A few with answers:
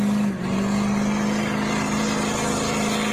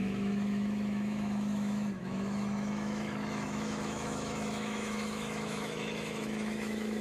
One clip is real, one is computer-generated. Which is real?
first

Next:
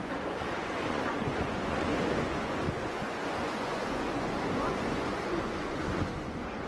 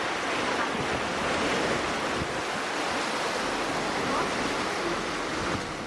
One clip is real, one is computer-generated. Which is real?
second